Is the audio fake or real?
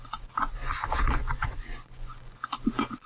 fake